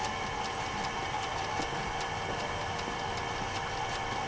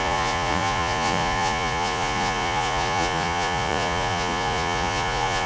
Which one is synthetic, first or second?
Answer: second